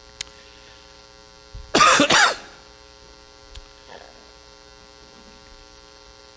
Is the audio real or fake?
real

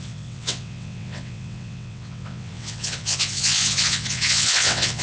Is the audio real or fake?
fake